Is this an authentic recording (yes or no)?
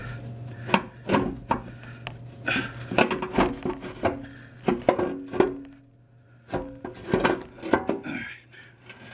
yes